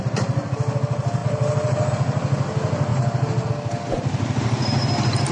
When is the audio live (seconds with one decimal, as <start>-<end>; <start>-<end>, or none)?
0.0-5.3